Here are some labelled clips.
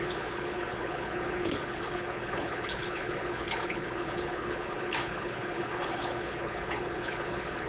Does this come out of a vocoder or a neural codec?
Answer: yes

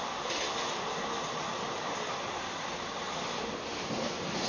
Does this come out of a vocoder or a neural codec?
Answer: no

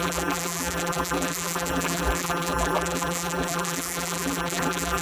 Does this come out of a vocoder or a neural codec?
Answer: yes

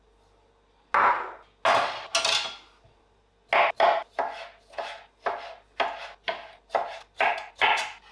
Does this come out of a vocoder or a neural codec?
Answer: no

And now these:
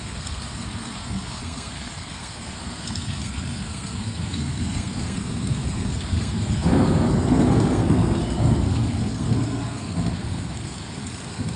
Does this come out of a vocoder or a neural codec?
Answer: yes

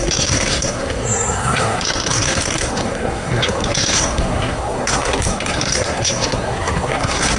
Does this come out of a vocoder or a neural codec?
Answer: yes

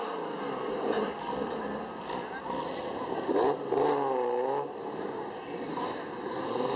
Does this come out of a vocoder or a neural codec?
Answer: no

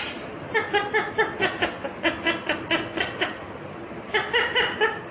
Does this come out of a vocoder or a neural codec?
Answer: no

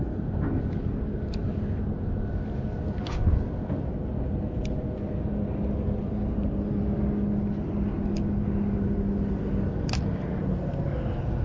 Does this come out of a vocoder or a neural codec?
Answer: no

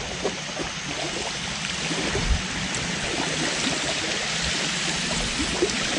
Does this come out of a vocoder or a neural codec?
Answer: no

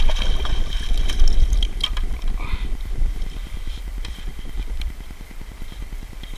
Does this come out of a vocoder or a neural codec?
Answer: yes